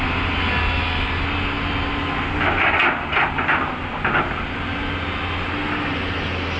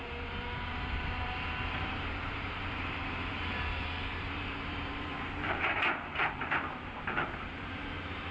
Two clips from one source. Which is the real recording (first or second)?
first